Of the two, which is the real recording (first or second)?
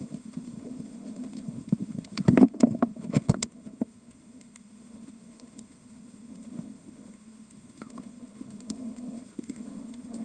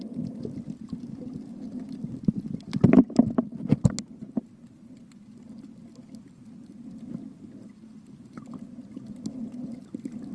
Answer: second